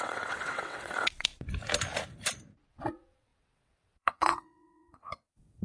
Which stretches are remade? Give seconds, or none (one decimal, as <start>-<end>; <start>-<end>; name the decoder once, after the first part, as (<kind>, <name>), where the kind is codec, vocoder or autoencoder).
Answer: 0.0-1.3 (vocoder, WaveNeXt); 2.7-5.6